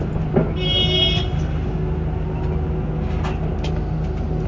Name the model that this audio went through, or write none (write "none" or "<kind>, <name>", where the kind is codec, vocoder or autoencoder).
none